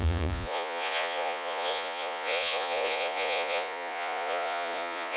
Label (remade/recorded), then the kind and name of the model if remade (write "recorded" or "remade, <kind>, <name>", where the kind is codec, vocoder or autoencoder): remade, vocoder, Vocos